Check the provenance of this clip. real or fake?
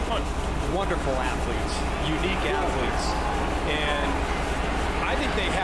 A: real